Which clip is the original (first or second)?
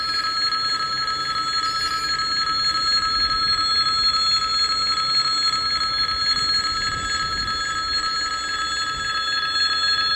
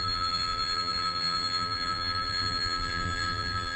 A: first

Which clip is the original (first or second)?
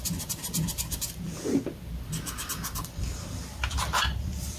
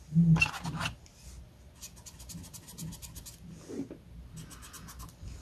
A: second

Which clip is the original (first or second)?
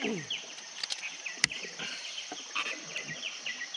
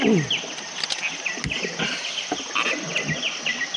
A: second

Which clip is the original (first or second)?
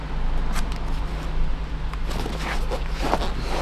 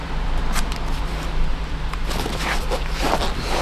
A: first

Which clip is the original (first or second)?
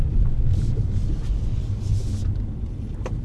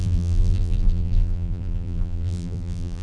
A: first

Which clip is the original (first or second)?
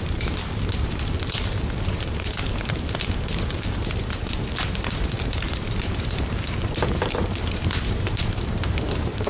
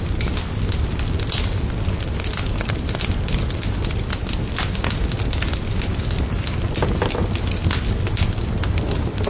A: second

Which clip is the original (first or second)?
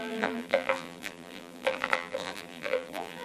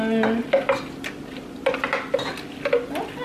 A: second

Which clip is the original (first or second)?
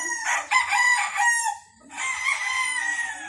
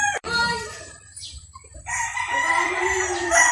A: first